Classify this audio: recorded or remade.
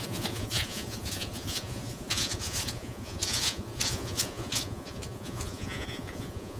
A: remade